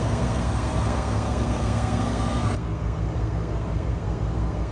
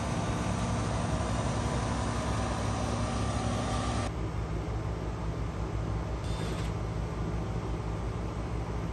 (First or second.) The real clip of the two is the second